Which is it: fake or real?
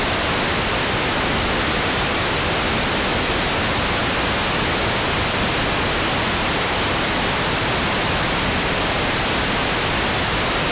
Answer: real